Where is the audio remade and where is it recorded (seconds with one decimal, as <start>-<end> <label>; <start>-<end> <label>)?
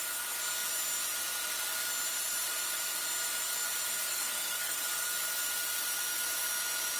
0.0-4.1 recorded; 4.1-4.8 remade; 4.8-7.0 recorded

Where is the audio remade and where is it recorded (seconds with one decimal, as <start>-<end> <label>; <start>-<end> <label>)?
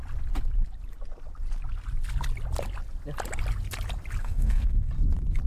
0.0-4.2 recorded; 4.2-4.9 remade; 4.9-5.5 recorded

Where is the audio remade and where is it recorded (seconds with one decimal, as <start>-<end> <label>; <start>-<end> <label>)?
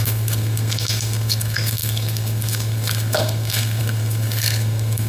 0.0-5.1 remade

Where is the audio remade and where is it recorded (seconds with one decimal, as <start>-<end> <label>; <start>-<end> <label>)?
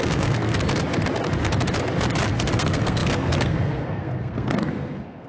0.0-0.5 remade; 0.5-2.3 recorded; 2.3-5.3 remade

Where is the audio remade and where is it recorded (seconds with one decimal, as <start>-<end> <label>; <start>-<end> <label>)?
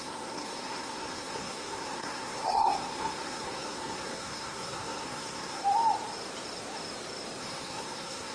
0.0-5.6 remade; 5.6-7.4 recorded; 7.4-8.3 remade